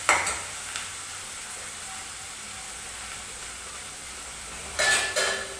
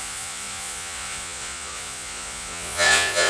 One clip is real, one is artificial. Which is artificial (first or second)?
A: second